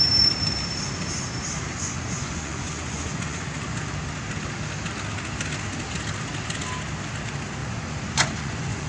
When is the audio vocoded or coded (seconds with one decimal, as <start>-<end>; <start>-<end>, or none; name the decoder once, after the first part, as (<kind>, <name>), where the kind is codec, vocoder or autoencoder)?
1.7-3.8 (vocoder, Vocos); 7.6-8.9